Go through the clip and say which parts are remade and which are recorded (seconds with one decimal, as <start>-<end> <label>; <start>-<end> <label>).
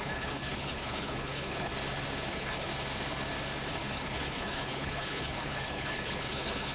0.0-1.7 remade; 1.7-2.3 recorded; 2.3-2.7 remade; 2.7-3.7 recorded; 3.7-6.7 remade